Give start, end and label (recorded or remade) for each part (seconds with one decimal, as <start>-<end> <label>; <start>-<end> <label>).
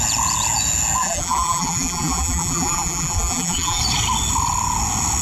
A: 0.0-1.0 recorded; 1.0-3.8 remade; 3.8-5.2 recorded